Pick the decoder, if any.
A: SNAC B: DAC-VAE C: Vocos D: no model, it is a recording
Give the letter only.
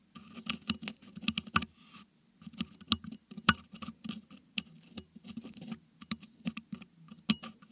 D